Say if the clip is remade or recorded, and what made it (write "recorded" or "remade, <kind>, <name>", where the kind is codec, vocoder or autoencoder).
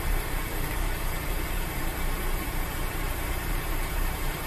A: remade, vocoder, BigVGAN v2